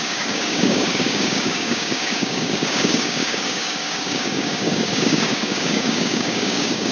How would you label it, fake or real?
fake